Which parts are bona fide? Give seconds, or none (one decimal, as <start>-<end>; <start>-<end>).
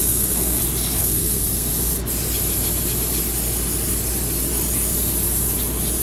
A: 0.6-1.0; 1.7-6.0